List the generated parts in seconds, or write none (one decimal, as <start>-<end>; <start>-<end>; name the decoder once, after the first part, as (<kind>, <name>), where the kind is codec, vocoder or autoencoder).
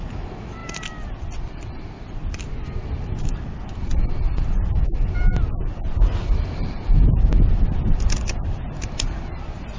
none